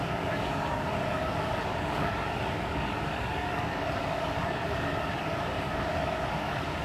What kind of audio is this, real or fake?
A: fake